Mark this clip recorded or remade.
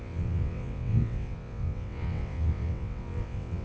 remade